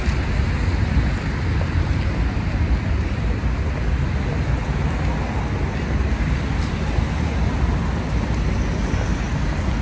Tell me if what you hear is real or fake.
real